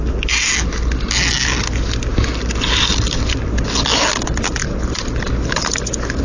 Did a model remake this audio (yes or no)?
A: no